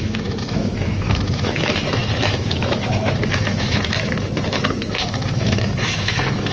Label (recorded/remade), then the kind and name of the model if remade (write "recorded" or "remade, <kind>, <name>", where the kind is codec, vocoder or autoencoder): remade, autoencoder, DAC-VAE